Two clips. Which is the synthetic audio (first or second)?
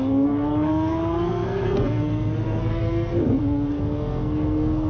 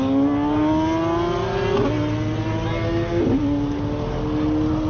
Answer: first